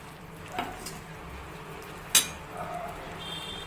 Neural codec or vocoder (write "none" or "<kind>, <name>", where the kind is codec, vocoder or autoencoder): none